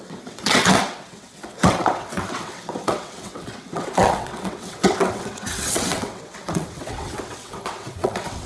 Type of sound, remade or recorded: remade